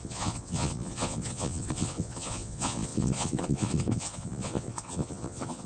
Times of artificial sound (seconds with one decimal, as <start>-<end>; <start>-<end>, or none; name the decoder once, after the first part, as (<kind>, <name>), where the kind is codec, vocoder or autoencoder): 0.0-5.7 (vocoder, Vocos)